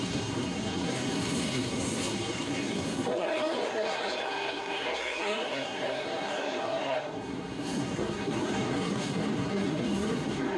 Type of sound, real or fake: fake